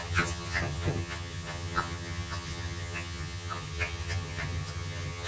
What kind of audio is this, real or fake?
fake